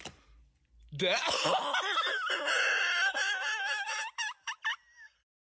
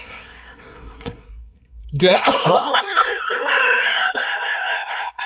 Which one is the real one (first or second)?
first